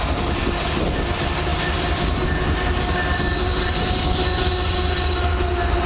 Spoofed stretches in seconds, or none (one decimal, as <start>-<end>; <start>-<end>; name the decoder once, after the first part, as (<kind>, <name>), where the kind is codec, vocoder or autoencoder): none